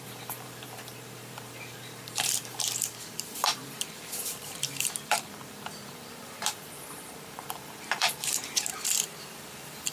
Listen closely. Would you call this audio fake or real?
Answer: fake